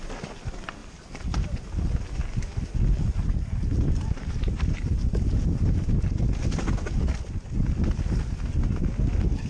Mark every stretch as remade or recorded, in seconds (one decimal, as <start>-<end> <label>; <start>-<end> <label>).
0.0-9.5 recorded